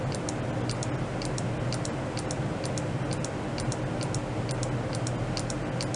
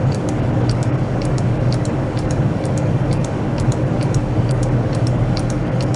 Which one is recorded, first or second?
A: first